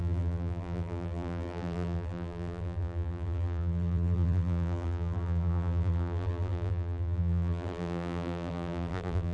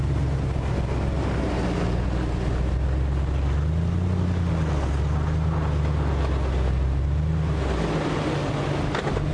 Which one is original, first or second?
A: second